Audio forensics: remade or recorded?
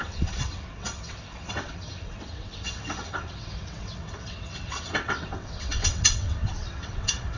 remade